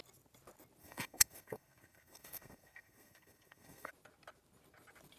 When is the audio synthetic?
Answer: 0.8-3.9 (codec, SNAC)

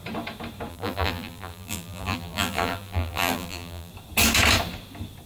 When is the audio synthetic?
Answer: 0.7-3.9 (vocoder, BigVGAN v2)

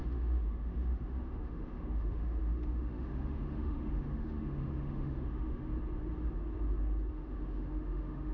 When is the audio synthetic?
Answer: 0.0-5.7 (autoencoder, DAC-VAE); 7.1-8.3

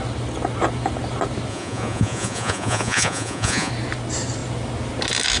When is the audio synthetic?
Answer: 1.5-3.7 (vocoder, Vocos)

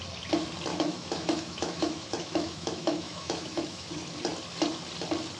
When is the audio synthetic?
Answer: 0.7-3.9 (autoencoder, DAC-VAE)